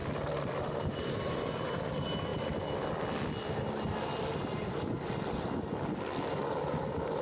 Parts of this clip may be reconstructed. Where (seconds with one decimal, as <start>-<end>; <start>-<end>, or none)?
none